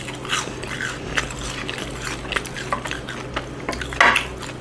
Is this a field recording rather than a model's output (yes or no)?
yes